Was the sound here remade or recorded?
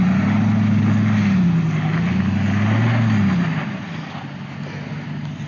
recorded